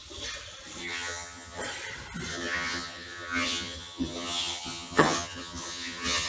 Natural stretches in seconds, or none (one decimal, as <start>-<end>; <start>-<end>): 0.0-0.8; 1.6-2.3